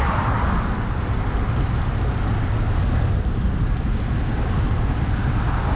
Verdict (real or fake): real